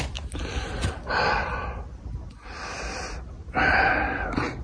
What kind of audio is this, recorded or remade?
recorded